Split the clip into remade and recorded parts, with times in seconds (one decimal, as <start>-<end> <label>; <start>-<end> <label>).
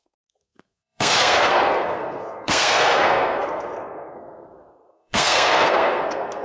0.0-6.4 remade